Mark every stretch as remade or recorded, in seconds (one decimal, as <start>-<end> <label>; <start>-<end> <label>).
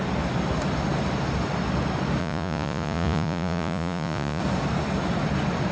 0.0-2.2 recorded; 2.2-4.4 remade; 4.4-5.7 recorded